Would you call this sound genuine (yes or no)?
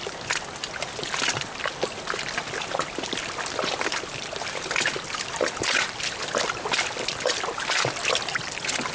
yes